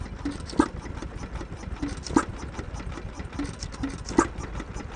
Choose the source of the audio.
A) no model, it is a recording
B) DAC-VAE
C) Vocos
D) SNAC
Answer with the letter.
A